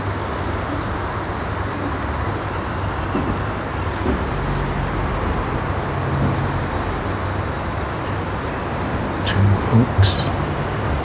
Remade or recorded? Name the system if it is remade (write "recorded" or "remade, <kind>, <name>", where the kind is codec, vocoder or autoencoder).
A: recorded